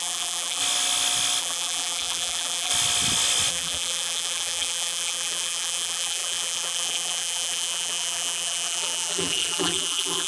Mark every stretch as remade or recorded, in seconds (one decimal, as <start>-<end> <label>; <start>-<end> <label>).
0.0-0.6 remade; 0.6-1.4 recorded; 1.4-2.7 remade; 2.7-3.5 recorded; 3.5-10.3 remade